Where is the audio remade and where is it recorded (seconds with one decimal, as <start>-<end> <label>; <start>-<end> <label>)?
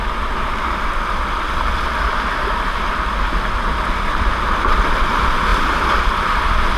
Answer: 0.0-6.8 recorded